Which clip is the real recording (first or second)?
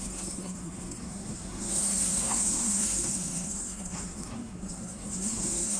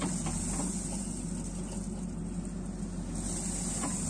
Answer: second